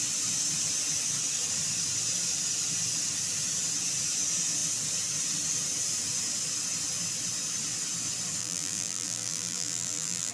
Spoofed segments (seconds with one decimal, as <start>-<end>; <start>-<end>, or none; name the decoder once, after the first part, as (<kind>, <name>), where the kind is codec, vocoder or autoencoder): 8.4-10.3 (vocoder, BigVGAN v2)